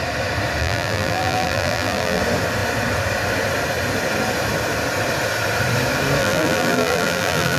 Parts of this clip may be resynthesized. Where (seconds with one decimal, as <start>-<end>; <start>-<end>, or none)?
0.6-2.2; 6.2-7.6